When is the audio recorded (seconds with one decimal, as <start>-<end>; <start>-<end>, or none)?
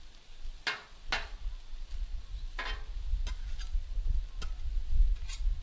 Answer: 0.0-5.6